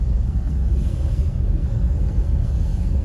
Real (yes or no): no